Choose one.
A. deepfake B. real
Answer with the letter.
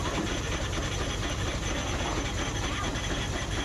B